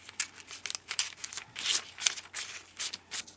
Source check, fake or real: real